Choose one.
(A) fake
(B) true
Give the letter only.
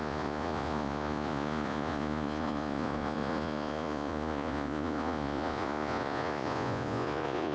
A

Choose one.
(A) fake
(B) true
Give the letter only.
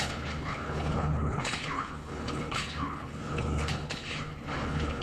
A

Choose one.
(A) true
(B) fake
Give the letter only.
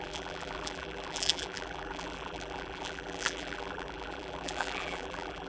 B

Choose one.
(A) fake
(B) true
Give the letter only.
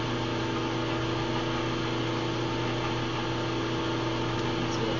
B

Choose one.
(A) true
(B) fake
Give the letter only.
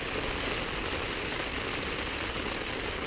A